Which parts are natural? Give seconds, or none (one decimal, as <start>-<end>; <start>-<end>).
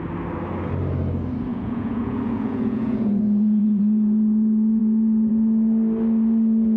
0.0-1.5; 3.8-6.8